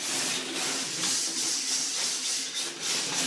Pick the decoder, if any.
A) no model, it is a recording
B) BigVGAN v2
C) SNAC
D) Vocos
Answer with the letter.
A